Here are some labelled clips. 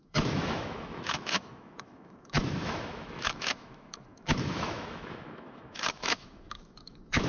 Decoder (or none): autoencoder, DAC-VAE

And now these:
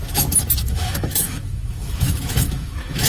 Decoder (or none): autoencoder, DAC-VAE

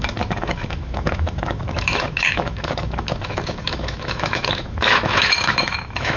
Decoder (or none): autoencoder, DAC-VAE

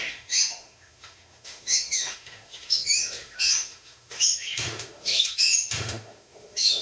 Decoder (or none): autoencoder, DAC-VAE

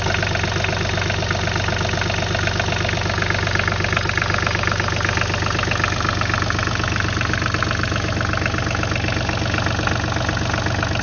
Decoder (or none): none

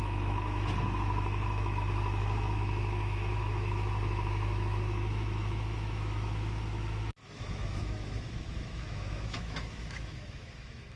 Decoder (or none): autoencoder, DAC-VAE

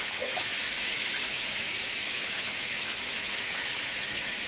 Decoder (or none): autoencoder, DAC-VAE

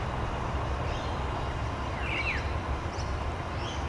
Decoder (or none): none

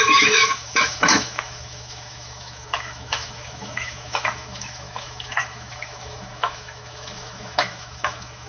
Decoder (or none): autoencoder, DAC-VAE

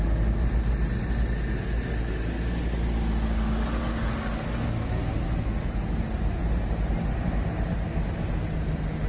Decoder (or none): none